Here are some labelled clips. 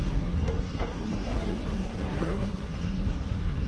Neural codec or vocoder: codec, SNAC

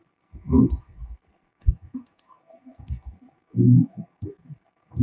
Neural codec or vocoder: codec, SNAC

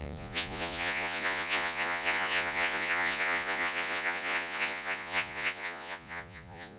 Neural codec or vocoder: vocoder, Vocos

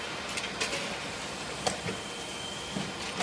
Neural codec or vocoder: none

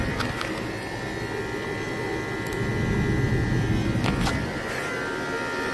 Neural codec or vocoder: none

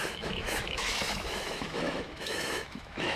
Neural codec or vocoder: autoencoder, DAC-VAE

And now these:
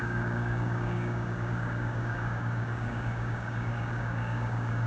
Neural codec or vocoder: codec, DAC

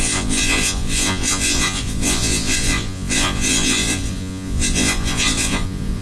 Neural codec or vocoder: vocoder, Vocos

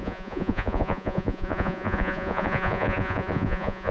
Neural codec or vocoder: vocoder, Vocos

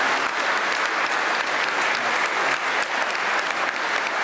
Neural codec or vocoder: none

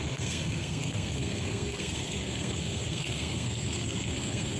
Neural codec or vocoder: codec, SNAC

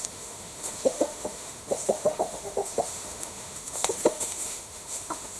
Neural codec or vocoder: autoencoder, DAC-VAE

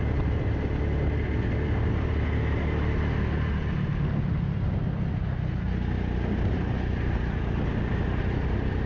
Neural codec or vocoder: none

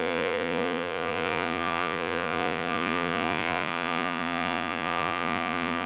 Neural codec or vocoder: vocoder, Vocos